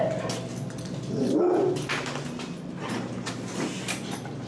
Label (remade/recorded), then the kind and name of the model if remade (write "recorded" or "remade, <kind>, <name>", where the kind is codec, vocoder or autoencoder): recorded